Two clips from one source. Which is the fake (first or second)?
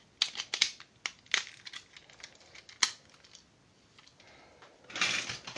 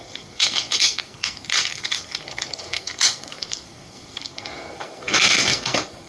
second